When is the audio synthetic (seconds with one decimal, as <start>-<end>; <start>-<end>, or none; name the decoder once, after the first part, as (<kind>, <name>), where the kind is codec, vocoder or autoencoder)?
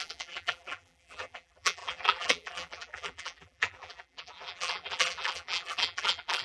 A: 0.0-6.4 (vocoder, BigVGAN v2)